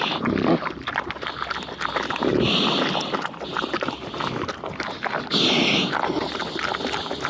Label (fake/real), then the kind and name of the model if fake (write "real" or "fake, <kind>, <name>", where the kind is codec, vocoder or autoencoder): real